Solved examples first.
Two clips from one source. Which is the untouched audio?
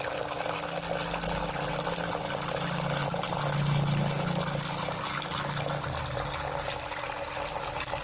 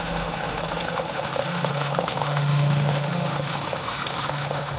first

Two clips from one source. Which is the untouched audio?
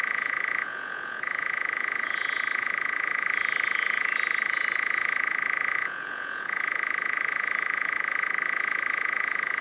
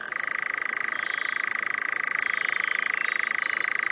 second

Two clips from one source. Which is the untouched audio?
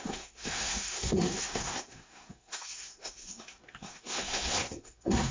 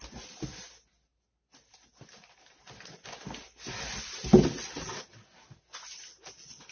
second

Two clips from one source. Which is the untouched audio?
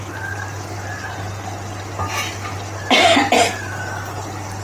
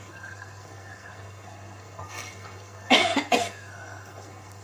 first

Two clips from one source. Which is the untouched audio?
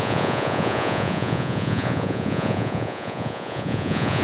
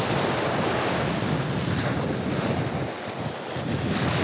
second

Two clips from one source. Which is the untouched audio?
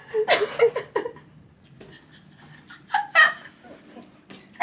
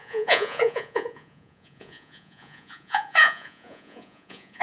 first